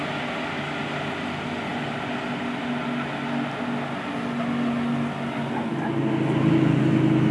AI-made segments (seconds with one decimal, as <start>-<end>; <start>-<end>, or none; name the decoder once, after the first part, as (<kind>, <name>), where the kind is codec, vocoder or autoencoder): none